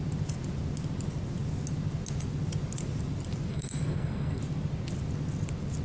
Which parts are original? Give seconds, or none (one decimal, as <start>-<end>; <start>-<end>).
0.0-3.5; 4.4-5.8